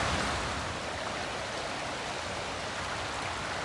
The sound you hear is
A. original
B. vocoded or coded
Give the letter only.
A